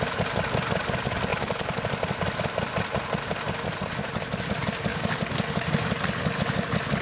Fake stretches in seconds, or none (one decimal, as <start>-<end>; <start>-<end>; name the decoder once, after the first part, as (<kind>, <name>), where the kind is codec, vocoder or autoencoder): 1.3-1.8 (codec, DAC); 4.9-6.4